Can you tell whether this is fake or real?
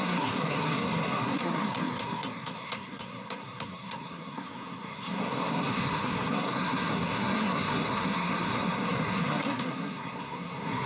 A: fake